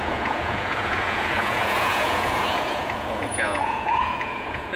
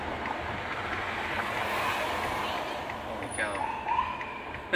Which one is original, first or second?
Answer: second